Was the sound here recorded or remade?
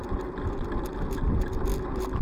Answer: recorded